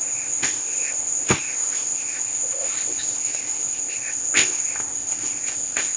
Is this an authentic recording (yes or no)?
no